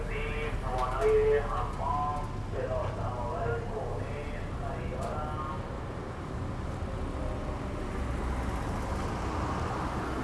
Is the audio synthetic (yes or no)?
no